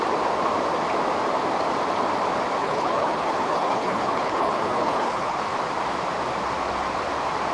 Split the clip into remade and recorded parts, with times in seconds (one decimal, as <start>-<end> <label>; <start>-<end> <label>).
0.0-2.6 recorded; 2.6-5.4 remade; 5.4-7.5 recorded